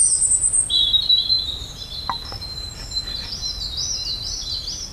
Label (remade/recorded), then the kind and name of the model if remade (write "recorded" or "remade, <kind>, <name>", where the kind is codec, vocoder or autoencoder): remade, vocoder, BigVGAN v2